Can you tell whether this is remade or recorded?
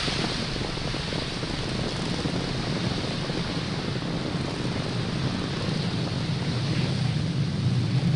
recorded